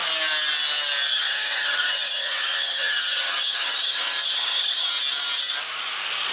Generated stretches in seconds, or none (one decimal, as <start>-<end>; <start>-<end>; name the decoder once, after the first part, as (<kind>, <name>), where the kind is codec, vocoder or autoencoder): 1.1-4.9 (vocoder, HiFi-GAN)